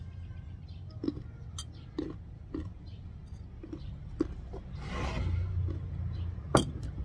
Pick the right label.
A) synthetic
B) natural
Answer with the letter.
B